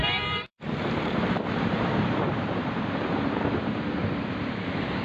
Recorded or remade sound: remade